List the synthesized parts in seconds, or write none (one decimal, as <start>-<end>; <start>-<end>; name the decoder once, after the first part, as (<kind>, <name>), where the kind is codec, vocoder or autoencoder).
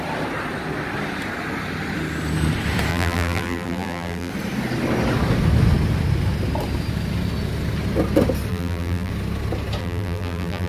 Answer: 2.9-4.3 (vocoder, BigVGAN v2); 8.5-9.1; 9.8-10.7